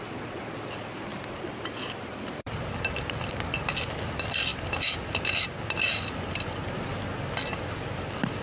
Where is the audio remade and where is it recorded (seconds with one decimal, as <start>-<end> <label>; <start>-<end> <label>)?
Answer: 0.0-1.1 recorded; 1.1-2.7 remade; 2.7-4.5 recorded; 4.5-5.1 remade; 5.1-8.4 recorded